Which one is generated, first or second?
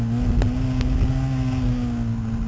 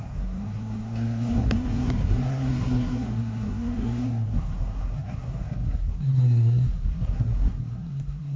second